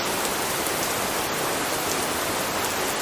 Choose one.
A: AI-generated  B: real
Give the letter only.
B